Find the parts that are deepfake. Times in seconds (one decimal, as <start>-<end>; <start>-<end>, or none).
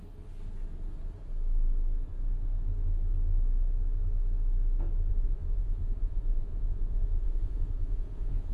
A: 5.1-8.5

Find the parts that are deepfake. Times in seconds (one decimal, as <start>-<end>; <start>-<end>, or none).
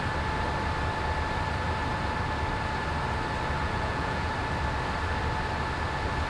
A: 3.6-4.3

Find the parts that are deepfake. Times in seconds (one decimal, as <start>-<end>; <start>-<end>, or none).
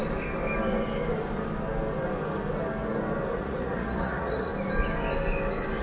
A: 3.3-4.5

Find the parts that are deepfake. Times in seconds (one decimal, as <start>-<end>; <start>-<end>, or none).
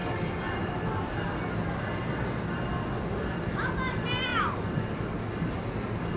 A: none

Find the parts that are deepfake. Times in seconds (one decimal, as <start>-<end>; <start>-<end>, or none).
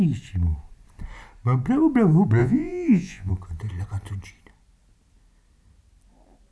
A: 2.4-3.3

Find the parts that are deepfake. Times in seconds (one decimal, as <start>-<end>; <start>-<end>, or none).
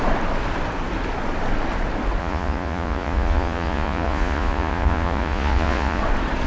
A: 2.2-6.0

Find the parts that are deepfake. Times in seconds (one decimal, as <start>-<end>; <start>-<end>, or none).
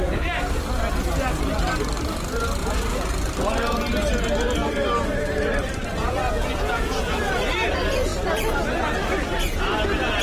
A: 2.6-3.1; 6.0-7.2